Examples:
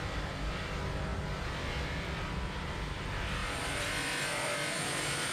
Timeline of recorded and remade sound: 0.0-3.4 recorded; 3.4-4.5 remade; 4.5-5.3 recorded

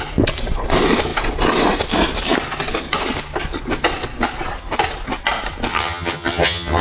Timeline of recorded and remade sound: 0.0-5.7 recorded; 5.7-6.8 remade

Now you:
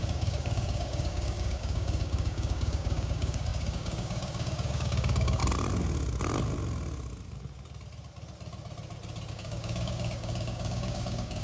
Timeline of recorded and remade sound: 0.0-5.4 remade; 5.4-9.3 recorded; 9.3-11.4 remade

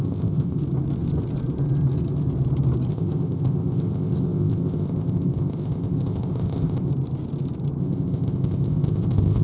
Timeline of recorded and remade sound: 0.0-0.6 remade; 0.6-2.9 recorded; 2.9-6.9 remade; 6.9-7.8 recorded; 7.8-9.4 remade

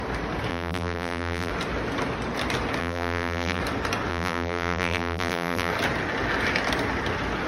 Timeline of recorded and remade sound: 0.0-0.5 recorded; 0.5-1.5 remade; 1.5-2.8 recorded; 2.8-3.6 remade; 3.6-4.1 recorded; 4.1-5.7 remade; 5.7-7.5 recorded

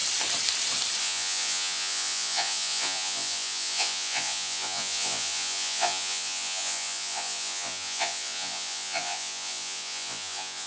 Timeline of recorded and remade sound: 0.0-1.0 recorded; 1.0-10.7 remade